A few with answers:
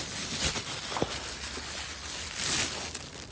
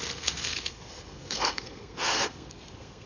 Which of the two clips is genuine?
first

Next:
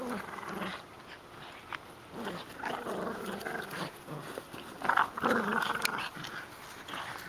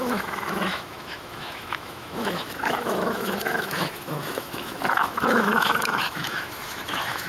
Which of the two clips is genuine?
first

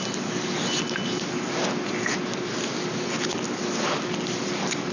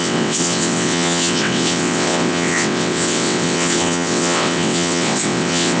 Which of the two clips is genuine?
first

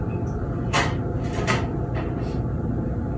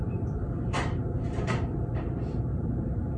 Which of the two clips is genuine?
first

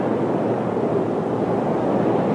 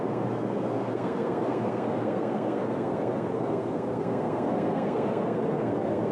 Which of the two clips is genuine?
first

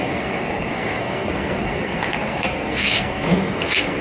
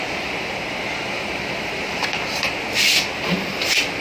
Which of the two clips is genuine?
second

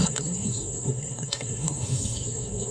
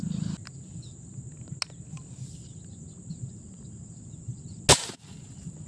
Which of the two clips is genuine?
second